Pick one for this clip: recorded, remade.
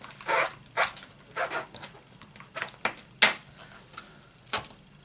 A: recorded